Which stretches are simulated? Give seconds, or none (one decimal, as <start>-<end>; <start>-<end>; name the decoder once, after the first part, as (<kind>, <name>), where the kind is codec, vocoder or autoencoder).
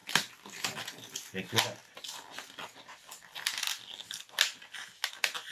0.0-0.8 (vocoder, BigVGAN v2)